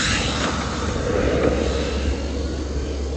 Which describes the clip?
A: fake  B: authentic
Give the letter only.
B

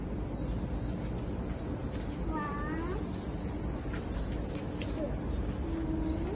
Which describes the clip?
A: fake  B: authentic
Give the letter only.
B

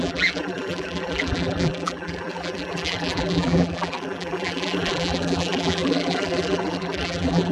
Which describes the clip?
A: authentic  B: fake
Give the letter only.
B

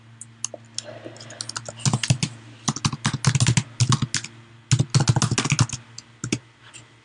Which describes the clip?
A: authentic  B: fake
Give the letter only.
A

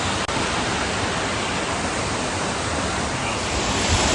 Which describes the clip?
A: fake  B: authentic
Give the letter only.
A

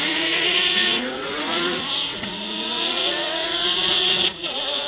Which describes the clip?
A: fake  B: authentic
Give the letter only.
A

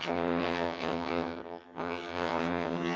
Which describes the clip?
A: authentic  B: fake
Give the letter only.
B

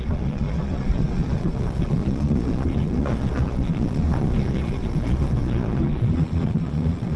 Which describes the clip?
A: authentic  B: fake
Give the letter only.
B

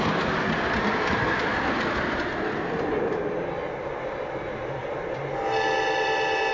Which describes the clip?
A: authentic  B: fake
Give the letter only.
A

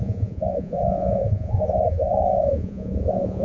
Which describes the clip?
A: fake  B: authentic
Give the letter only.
A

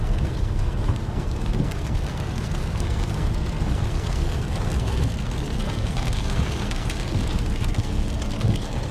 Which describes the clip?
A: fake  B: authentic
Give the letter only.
A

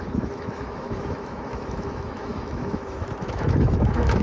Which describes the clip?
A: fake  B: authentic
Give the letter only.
A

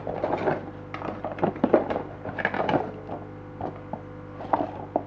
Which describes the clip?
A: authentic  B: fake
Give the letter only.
A